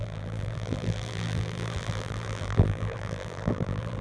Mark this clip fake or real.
fake